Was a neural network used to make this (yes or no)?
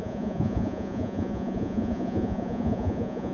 yes